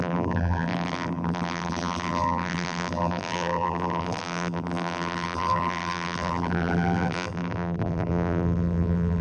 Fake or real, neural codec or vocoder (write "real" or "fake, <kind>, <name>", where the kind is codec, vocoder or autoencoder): fake, vocoder, BigVGAN v2